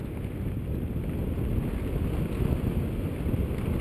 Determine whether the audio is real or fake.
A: real